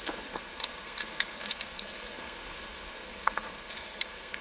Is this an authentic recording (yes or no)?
no